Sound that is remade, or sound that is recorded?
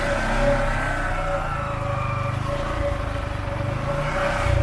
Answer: recorded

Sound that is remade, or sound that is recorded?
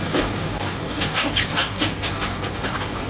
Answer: remade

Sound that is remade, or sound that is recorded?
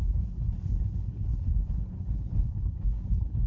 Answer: remade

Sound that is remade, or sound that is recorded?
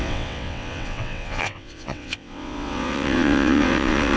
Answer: remade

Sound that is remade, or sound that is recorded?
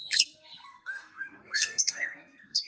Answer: remade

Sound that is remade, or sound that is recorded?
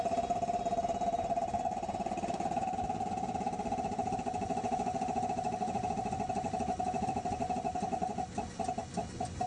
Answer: recorded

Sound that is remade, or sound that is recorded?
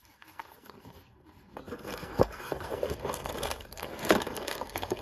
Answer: remade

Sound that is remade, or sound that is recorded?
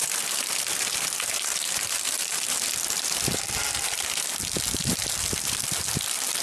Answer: recorded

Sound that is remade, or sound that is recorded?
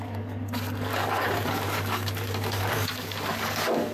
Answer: remade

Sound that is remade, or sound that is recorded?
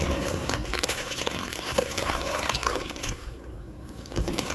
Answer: remade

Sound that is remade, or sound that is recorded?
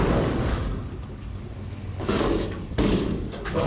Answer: remade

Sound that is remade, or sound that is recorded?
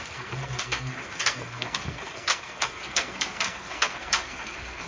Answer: remade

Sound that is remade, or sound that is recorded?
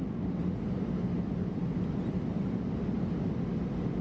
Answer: recorded